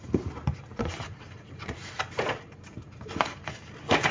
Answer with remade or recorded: remade